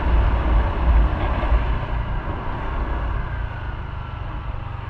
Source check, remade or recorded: recorded